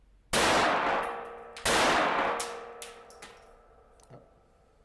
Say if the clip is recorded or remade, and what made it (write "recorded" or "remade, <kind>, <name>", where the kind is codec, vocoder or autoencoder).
recorded